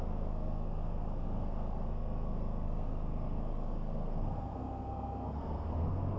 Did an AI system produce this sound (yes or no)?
yes